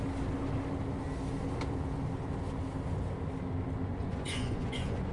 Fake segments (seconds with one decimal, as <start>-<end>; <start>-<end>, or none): 3.9-5.1